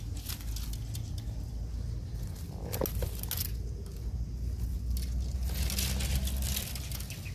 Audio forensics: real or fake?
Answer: real